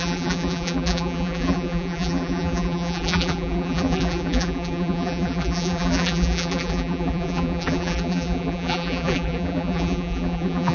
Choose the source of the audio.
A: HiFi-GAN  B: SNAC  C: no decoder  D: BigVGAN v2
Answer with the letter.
D